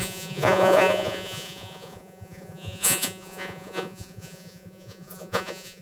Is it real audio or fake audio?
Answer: fake